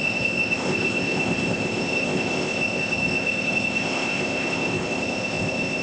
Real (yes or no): no